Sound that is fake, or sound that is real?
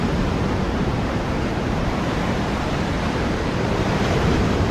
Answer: fake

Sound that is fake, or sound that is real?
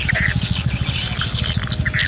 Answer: real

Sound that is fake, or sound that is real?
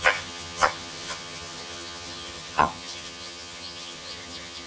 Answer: fake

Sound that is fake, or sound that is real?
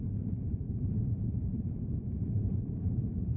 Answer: fake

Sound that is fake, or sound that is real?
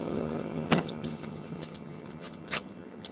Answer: fake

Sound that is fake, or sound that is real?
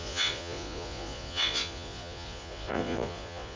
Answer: fake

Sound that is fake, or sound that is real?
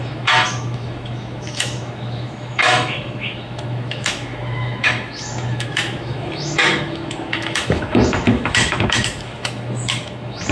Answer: fake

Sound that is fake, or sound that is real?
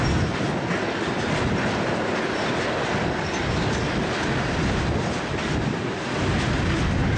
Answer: real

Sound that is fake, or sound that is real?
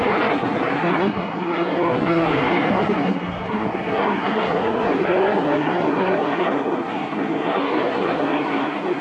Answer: fake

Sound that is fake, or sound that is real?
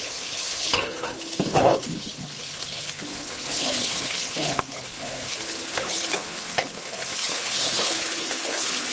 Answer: fake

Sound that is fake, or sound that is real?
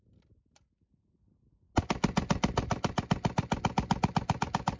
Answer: real